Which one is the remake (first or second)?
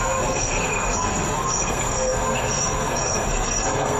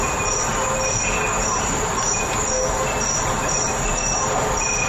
first